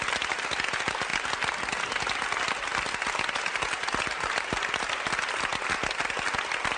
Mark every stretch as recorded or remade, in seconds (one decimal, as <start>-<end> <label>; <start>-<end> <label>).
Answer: 0.0-6.8 recorded